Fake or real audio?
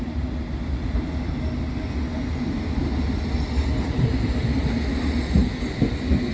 real